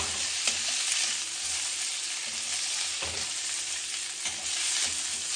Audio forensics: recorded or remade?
recorded